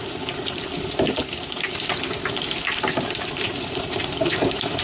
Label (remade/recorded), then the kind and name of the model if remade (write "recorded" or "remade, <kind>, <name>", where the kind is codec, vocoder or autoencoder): remade, vocoder, BigVGAN v2